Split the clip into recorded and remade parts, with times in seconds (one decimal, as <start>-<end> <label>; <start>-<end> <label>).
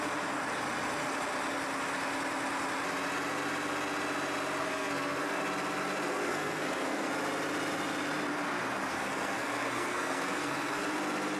0.0-4.6 recorded; 4.6-5.4 remade; 5.4-6.3 recorded; 6.3-7.1 remade; 7.1-8.9 recorded; 8.9-10.8 remade; 10.8-11.4 recorded